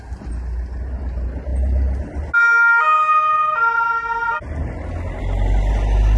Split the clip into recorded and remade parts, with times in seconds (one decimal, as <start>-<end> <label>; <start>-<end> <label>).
0.0-6.2 recorded